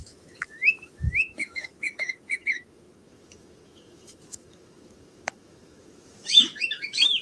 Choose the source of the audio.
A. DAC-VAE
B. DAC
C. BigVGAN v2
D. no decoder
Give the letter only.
A